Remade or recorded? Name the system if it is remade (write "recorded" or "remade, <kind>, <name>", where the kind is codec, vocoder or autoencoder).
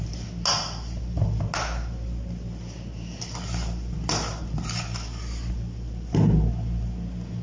recorded